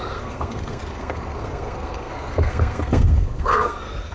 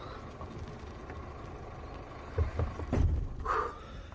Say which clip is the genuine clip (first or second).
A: second